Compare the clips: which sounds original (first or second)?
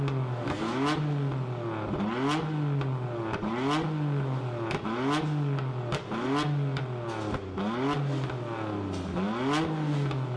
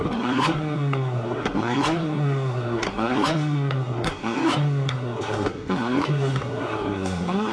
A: first